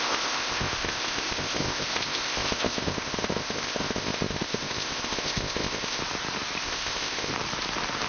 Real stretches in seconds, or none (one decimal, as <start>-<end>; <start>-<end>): 6.0-6.6; 7.3-8.1